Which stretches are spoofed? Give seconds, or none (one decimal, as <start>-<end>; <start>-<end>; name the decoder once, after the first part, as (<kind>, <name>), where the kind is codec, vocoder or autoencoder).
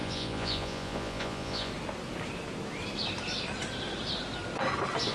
0.0-1.7 (vocoder, Vocos)